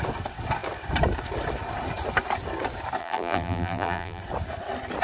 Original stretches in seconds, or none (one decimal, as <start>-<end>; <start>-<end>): 0.0-3.0; 4.2-5.0